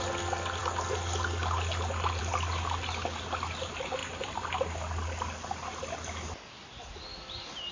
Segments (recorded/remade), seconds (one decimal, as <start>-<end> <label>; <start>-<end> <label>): 0.0-7.7 recorded